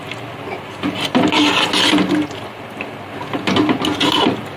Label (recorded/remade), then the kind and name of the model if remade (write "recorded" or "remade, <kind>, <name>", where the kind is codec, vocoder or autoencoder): recorded